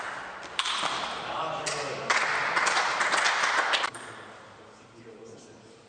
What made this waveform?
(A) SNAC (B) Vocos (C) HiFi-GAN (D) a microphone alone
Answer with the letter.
D